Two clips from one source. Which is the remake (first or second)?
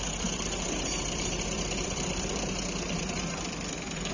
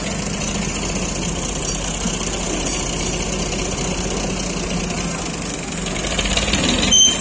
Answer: first